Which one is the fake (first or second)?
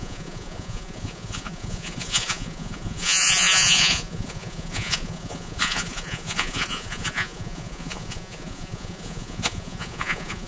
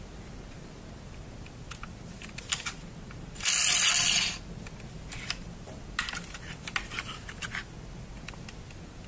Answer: first